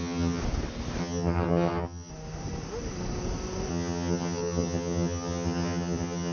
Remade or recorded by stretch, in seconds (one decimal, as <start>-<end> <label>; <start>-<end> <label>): 0.0-0.4 remade; 0.4-1.0 recorded; 1.0-2.1 remade; 2.1-3.7 recorded; 3.7-6.3 remade